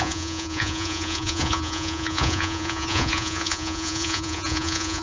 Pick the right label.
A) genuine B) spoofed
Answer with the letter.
B